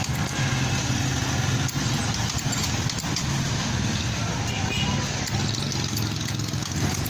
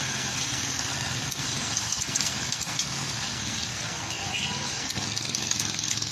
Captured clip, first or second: first